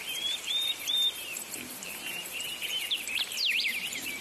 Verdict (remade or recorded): remade